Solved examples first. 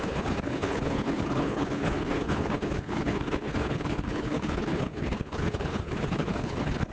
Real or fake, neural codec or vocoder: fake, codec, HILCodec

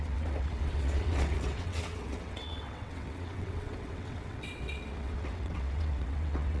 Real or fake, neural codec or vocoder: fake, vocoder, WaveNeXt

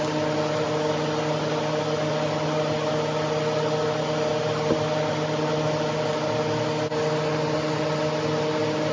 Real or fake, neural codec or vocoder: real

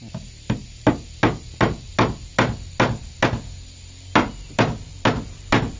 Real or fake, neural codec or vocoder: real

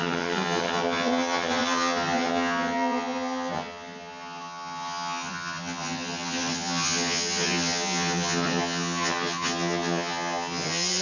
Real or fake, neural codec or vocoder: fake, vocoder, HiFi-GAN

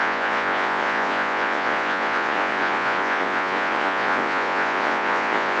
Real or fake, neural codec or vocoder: fake, vocoder, Vocos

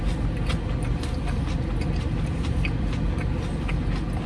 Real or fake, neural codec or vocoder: real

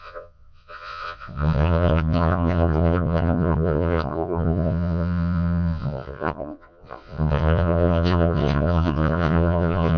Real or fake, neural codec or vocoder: fake, vocoder, Vocos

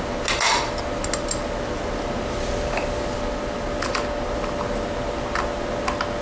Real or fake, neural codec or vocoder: real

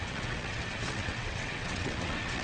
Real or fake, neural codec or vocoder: fake, vocoder, WaveNeXt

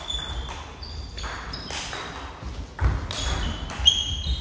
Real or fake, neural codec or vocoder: real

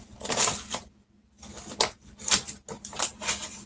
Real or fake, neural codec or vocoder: real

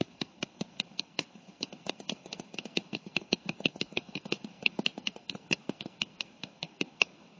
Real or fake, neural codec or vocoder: fake, codec, SNAC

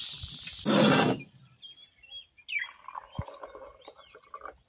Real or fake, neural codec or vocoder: real